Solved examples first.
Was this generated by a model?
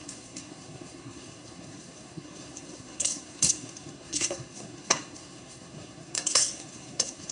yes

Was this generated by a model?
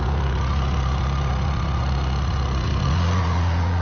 yes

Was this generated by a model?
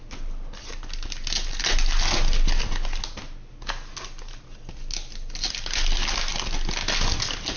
no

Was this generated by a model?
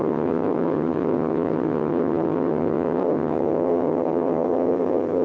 yes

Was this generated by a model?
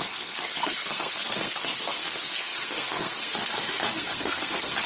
yes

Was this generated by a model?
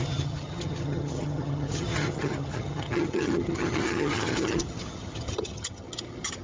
yes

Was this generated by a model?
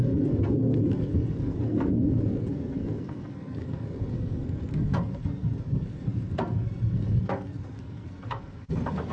yes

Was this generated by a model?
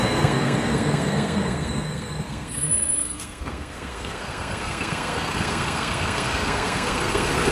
yes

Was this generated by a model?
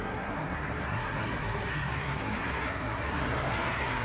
yes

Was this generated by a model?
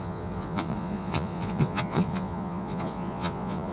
yes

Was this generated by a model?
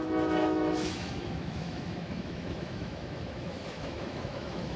yes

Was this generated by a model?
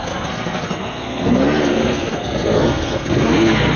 yes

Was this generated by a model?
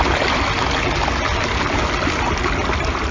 no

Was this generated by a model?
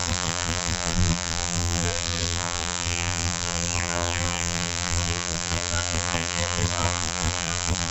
yes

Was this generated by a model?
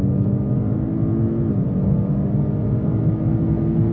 no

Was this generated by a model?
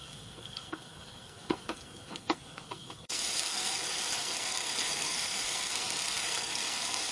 yes